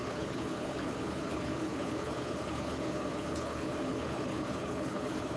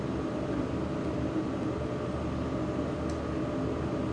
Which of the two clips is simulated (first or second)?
first